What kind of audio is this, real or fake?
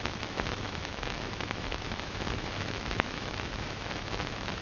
fake